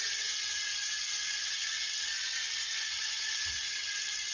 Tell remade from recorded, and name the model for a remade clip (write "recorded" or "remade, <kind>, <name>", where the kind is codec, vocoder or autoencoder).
remade, vocoder, WaveNeXt